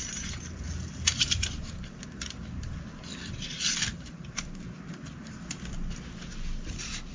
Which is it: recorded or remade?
recorded